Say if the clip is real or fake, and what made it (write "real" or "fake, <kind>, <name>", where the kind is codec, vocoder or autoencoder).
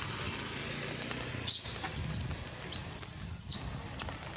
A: real